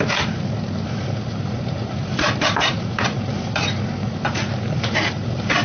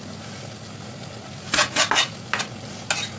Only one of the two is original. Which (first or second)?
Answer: second